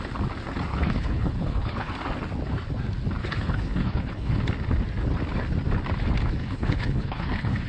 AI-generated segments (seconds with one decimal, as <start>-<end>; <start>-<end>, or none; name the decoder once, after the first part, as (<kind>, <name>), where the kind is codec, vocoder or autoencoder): 0.7-1.9 (codec, HILCodec); 3.2-4.4; 6.4-7.7